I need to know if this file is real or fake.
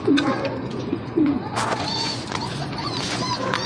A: fake